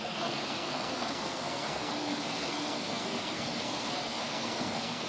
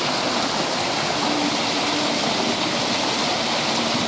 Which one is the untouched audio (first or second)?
second